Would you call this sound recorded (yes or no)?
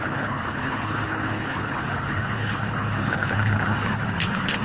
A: no